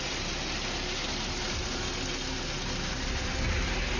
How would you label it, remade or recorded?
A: recorded